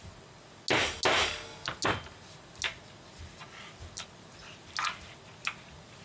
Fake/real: real